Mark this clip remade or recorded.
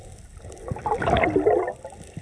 recorded